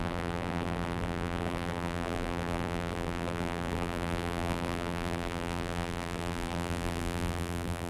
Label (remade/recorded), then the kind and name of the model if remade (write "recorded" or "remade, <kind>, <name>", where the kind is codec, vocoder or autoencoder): remade, vocoder, BigVGAN v2